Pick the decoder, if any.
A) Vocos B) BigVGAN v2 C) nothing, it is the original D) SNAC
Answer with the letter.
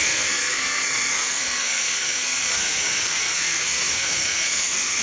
D